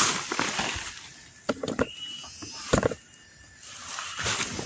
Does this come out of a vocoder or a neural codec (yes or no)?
no